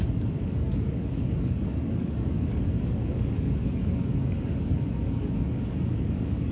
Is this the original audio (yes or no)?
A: no